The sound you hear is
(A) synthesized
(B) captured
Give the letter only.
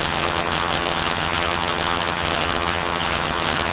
A